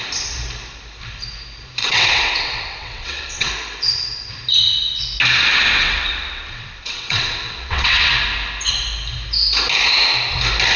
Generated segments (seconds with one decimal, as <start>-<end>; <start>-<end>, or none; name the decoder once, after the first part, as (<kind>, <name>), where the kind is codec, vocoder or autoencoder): 1.8-3.5 (vocoder, WaveNeXt); 5.8-8.1